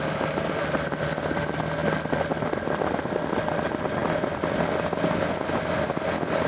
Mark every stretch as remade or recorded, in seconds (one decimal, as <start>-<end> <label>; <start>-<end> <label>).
0.0-6.5 recorded